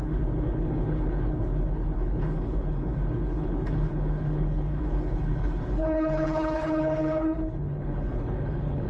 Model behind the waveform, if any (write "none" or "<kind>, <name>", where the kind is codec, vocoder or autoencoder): codec, HILCodec